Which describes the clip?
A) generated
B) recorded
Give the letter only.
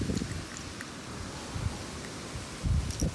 B